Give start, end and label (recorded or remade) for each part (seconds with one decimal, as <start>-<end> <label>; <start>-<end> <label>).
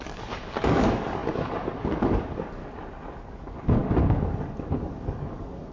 0.0-2.6 remade; 2.6-3.3 recorded; 3.3-5.7 remade